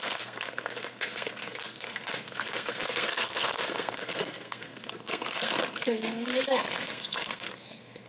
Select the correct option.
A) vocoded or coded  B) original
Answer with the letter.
A